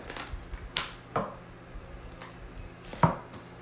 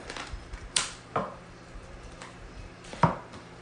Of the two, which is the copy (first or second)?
second